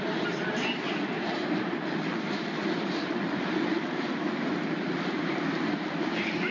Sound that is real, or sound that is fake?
fake